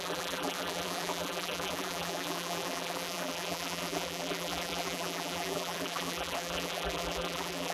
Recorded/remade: remade